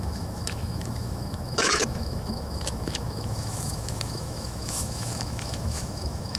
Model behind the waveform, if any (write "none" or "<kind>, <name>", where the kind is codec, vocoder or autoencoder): autoencoder, DAC-VAE